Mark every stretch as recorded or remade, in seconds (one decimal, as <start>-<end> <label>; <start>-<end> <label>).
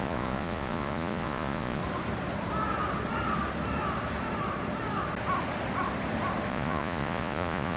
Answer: 0.0-1.8 remade; 1.8-6.5 recorded; 6.5-7.8 remade